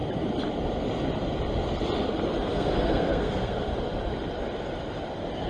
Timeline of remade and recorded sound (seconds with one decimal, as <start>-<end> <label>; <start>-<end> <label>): 0.0-2.5 recorded; 2.5-3.7 remade; 3.7-5.5 recorded